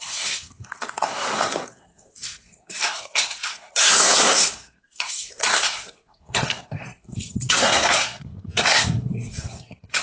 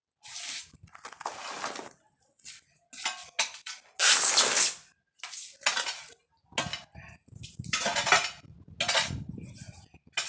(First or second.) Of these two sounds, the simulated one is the first